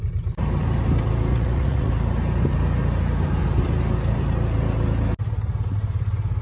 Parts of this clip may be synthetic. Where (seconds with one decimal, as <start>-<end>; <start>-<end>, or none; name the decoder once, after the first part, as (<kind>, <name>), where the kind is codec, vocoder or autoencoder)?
1.3-1.9 (vocoder, Vocos)